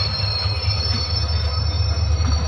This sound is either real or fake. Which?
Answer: real